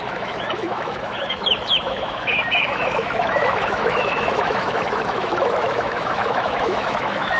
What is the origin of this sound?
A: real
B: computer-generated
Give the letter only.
B